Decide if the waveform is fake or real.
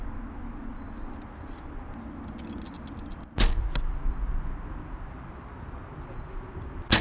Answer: real